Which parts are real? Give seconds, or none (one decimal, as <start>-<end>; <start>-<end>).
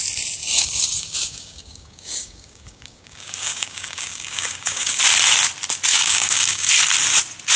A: 0.0-0.4; 5.0-5.9; 6.7-7.6